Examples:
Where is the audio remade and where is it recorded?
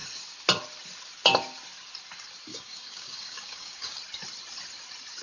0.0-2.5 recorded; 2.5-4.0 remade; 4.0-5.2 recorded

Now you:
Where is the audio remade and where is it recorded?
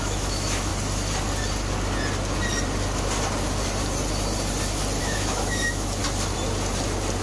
0.0-0.7 remade; 0.7-5.0 recorded; 5.0-6.0 remade; 6.0-7.2 recorded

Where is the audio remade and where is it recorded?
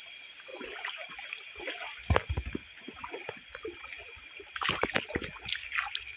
0.0-6.2 recorded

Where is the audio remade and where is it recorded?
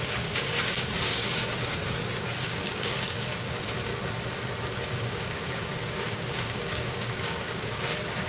0.0-1.8 remade; 1.8-2.4 recorded; 2.4-3.9 remade; 3.9-4.9 recorded; 4.9-8.3 remade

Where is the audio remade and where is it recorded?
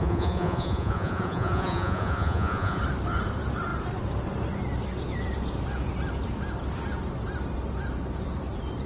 0.0-2.8 remade; 2.8-8.9 recorded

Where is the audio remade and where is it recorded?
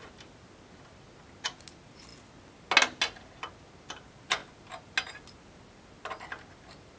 0.0-7.0 recorded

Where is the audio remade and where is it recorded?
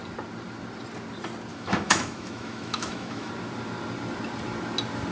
0.0-1.5 recorded; 1.5-3.3 remade; 3.3-5.1 recorded